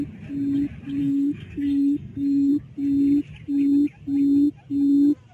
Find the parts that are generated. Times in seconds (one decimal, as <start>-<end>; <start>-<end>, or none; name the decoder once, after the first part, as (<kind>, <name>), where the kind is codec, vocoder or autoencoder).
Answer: 1.0-2.5 (codec, SNAC)